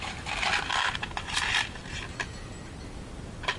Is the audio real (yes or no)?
yes